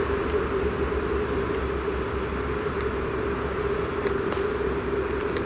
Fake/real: real